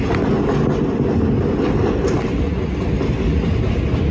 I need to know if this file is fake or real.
real